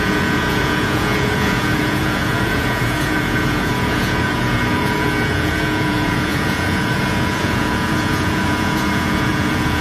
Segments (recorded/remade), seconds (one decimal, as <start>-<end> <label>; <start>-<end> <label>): 0.0-9.8 remade